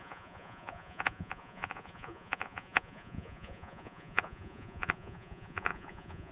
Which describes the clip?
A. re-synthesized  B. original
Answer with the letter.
A